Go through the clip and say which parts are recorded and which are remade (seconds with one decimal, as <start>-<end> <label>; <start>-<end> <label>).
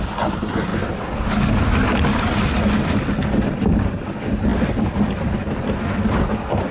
0.0-6.7 recorded